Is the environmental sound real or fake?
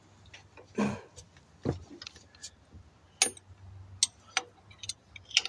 real